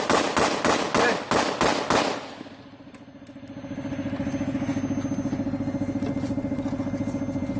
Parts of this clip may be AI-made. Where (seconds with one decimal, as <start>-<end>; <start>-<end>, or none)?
none